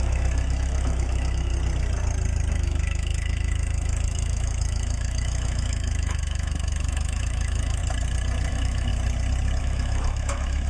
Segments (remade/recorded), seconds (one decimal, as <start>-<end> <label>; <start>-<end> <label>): 0.0-1.5 remade; 1.5-2.5 recorded; 2.5-7.8 remade; 7.8-8.5 recorded; 8.5-8.9 remade; 8.9-9.6 recorded; 9.6-10.7 remade